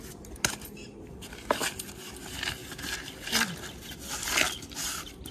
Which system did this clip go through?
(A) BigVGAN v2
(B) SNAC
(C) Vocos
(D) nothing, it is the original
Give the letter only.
D